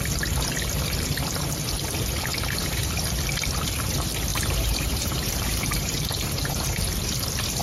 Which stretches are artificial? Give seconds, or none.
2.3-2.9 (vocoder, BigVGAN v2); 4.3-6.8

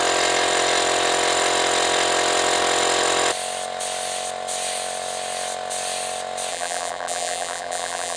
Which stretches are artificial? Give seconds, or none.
6.5-8.2 (vocoder, BigVGAN v2)

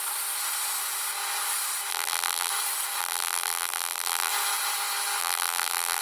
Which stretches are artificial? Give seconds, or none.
1.9-2.5 (vocoder, BigVGAN v2); 3.0-4.3; 5.2-6.0

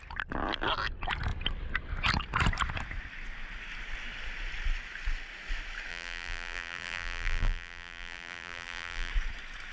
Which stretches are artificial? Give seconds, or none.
5.9-9.1 (vocoder, BigVGAN v2)

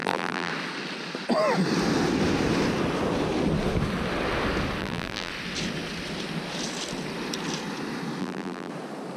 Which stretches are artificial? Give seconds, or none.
0.0-0.5 (vocoder, BigVGAN v2); 4.8-5.3; 8.2-8.7

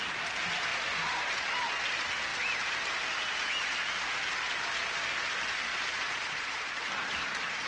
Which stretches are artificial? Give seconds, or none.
5.7-7.7 (vocoder, BigVGAN v2)

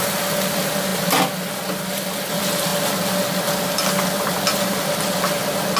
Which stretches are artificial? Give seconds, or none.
none

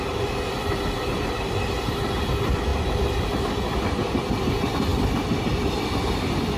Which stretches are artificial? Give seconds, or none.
4.9-5.4 (vocoder, BigVGAN v2)